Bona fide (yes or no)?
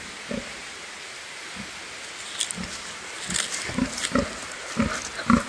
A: yes